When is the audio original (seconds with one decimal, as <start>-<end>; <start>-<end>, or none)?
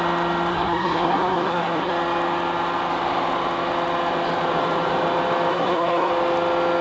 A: 0.0-0.5; 1.9-5.5; 6.1-6.8